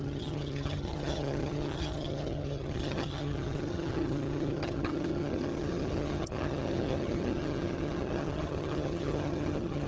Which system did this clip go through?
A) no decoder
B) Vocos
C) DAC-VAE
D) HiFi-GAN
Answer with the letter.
D